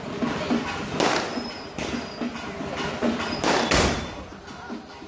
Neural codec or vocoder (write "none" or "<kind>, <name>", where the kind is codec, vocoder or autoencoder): none